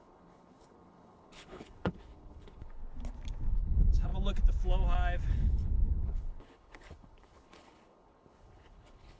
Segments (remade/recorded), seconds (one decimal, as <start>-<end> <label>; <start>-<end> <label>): 0.0-2.8 remade; 2.8-3.5 recorded; 3.5-4.1 remade; 4.1-5.3 recorded; 5.3-9.2 remade